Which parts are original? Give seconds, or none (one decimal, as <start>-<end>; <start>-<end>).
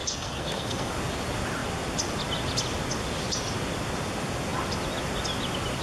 0.9-5.8